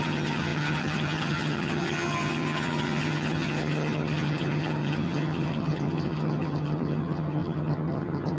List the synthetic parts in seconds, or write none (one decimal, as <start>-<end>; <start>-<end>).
0.0-8.4